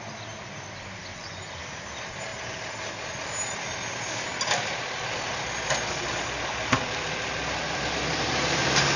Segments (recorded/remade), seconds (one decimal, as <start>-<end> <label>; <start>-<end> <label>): 0.0-1.1 recorded; 1.1-1.6 remade; 1.6-9.0 recorded